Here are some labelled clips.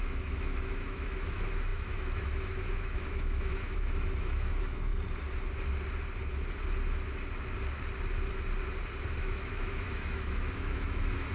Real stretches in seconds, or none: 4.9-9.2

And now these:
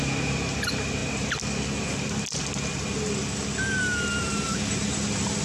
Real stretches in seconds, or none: 0.0-5.4

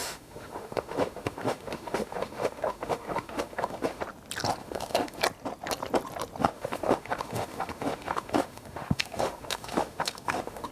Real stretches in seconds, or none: 4.0-4.6; 5.2-6.4

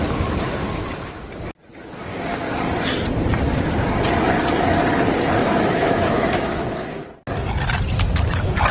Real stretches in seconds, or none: 0.0-5.4; 7.0-8.7

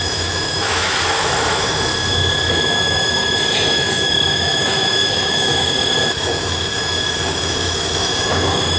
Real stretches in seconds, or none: 1.9-2.5

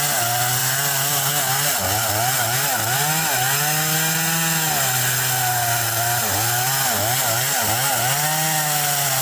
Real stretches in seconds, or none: 0.0-9.2